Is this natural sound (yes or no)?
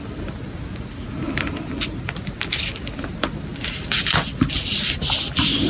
yes